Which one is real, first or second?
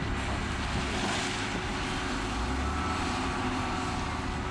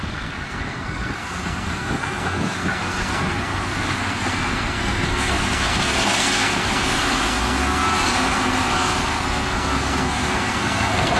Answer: first